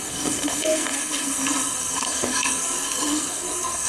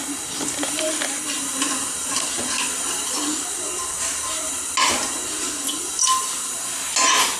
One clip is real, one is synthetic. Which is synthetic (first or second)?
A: first